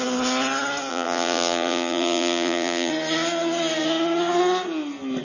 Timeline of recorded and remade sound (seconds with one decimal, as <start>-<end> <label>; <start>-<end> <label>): 0.0-0.9 recorded; 0.9-2.9 remade; 2.9-5.2 recorded